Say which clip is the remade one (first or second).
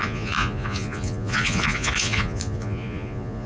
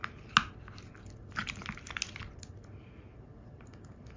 first